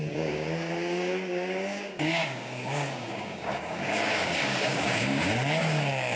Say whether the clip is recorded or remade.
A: remade